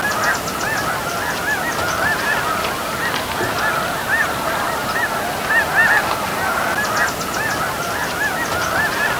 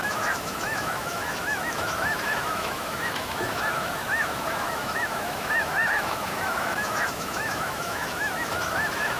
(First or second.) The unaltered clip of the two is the first